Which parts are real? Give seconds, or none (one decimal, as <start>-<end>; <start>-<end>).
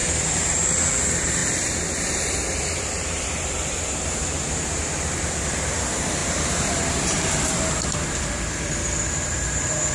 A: 1.4-2.3